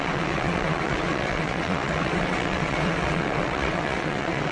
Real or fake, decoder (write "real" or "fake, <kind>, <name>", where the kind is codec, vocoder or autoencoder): fake, vocoder, WaveNeXt